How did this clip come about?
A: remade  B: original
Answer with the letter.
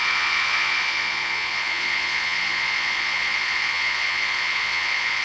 A